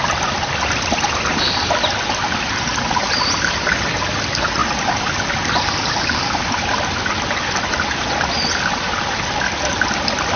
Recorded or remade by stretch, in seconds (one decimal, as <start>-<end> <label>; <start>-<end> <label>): 0.0-10.4 recorded